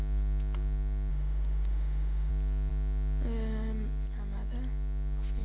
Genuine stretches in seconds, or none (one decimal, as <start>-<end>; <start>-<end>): 0.0-1.1; 2.3-5.4